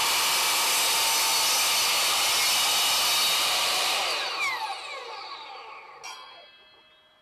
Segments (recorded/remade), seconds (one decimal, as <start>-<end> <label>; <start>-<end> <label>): 0.0-3.3 recorded; 3.3-5.7 remade; 5.7-7.2 recorded